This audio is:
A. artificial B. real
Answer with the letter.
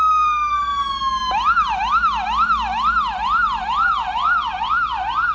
B